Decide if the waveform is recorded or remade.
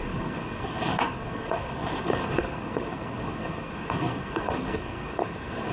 remade